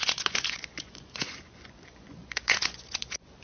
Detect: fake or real fake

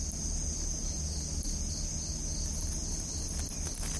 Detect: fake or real real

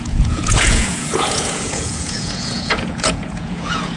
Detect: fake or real fake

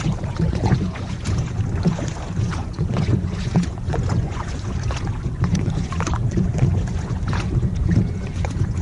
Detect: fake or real fake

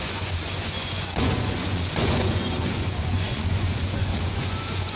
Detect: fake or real fake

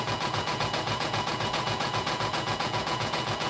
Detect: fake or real fake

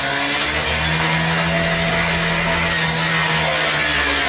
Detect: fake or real real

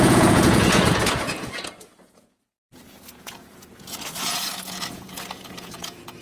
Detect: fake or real fake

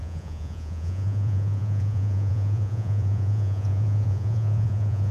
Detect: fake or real fake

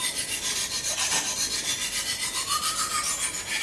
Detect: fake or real real